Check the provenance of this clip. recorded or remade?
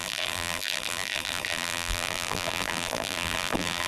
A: remade